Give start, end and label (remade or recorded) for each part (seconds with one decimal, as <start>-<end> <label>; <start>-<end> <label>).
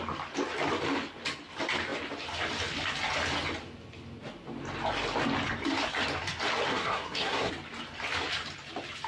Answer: 0.0-6.7 recorded; 6.7-7.5 remade; 7.5-9.1 recorded